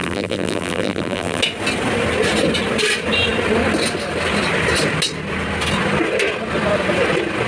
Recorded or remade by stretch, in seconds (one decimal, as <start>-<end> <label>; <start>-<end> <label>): 0.0-1.4 remade; 1.4-7.5 recorded